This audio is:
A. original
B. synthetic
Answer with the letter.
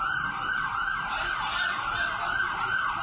A